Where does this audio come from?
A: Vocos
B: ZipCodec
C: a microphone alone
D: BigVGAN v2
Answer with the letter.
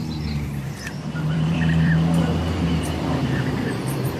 D